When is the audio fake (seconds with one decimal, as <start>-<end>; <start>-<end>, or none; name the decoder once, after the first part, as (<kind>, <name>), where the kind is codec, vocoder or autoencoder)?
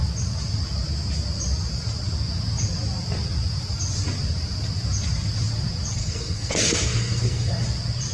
6.0-7.5 (codec, SNAC)